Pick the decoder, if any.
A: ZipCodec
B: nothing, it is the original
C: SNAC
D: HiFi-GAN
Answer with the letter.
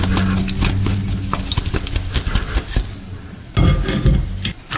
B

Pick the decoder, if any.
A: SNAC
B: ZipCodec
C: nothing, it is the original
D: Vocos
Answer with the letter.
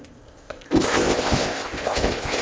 B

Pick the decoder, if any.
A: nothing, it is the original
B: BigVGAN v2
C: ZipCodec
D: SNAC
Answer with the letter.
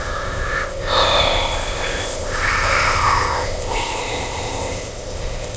C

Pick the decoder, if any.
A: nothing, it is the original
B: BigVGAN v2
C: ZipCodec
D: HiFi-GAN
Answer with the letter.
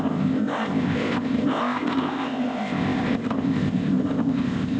C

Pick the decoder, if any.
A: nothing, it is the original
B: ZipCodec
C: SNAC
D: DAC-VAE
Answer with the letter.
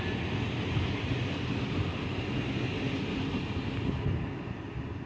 A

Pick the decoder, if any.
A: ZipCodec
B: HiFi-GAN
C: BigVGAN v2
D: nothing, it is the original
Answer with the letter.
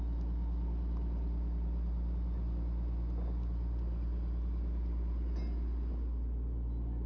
D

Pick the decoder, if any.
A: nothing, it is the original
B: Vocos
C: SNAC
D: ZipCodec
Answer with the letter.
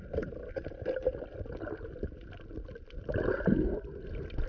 A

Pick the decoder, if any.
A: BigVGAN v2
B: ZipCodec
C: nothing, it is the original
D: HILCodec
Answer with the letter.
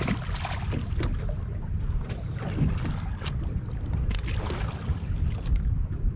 C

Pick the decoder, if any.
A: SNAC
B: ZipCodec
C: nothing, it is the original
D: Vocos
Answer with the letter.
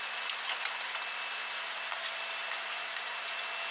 C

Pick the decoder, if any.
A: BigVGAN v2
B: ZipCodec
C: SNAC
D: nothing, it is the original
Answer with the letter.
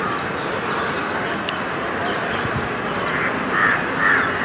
D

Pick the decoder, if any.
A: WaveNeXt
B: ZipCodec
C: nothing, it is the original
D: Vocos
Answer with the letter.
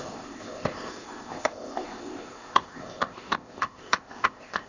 B